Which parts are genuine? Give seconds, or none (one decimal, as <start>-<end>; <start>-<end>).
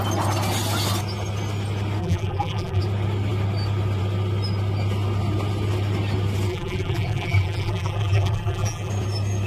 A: 0.0-2.0; 2.8-6.5; 8.9-9.5